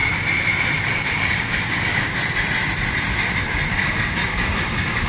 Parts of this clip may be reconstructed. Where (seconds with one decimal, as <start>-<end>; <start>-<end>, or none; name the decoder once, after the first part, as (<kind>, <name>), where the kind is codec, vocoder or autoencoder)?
0.8-2.2 (codec, DAC); 3.7-5.1